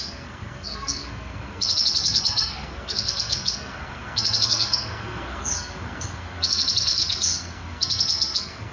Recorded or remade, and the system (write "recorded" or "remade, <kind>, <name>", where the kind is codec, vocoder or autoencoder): remade, codec, SNAC